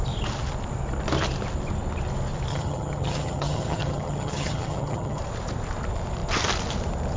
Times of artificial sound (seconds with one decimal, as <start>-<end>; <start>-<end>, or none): 2.5-5.2